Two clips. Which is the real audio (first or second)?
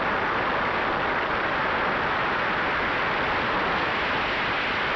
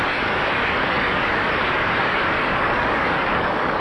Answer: first